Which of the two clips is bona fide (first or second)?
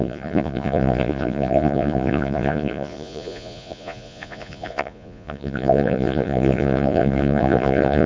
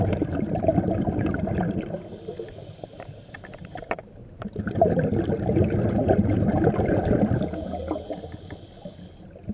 second